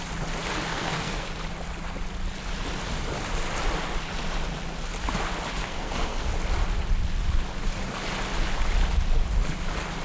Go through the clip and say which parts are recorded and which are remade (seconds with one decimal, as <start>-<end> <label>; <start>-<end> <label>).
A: 0.0-0.7 recorded; 0.7-1.3 remade; 1.3-5.6 recorded; 5.6-6.3 remade; 6.3-10.0 recorded